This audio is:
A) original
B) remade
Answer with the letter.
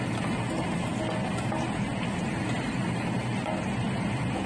A